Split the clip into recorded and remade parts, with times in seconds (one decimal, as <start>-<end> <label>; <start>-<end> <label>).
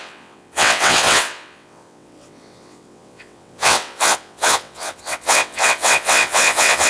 0.0-6.9 remade